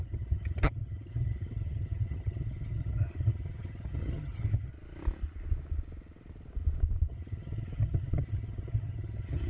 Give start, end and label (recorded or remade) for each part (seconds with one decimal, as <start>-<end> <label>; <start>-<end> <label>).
0.0-4.7 remade; 4.7-7.1 recorded; 7.1-9.5 remade